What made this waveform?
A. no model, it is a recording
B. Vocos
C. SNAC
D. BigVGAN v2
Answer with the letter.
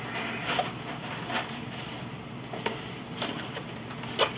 A